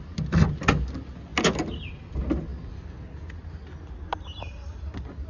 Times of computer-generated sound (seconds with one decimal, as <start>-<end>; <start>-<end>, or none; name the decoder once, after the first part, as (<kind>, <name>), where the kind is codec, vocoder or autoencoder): none